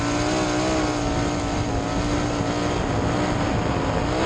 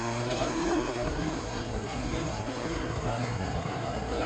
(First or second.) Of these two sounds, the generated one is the second